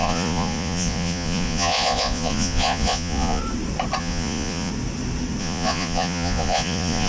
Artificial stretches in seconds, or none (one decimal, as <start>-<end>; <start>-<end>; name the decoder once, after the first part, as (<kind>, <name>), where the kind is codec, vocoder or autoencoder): 0.0-3.4 (vocoder, Vocos); 4.0-4.7; 5.4-7.1